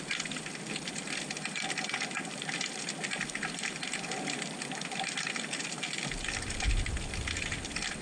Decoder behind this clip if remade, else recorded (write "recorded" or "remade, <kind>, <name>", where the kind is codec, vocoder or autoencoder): recorded